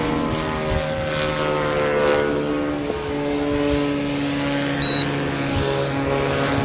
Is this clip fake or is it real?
real